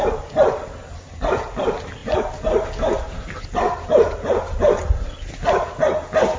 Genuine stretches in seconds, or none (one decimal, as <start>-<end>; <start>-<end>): 0.0-6.4

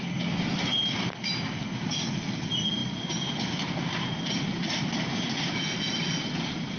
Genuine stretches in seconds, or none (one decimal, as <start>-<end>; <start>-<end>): 0.0-6.8

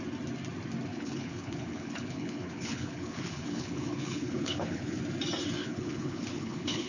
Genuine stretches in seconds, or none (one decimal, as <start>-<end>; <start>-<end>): 0.0-0.9; 5.0-5.6

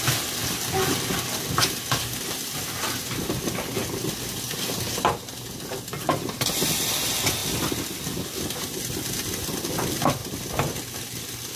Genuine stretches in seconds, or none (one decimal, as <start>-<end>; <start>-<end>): 0.0-11.6

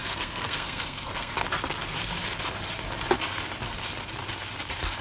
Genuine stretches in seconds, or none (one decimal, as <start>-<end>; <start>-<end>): 1.3-5.0